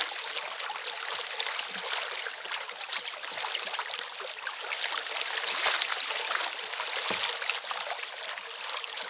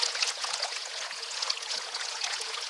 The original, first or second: first